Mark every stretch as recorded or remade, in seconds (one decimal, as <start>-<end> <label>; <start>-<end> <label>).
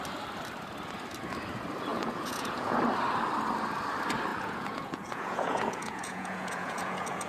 0.0-1.9 recorded; 1.9-2.8 remade; 2.8-4.3 recorded; 4.3-7.3 remade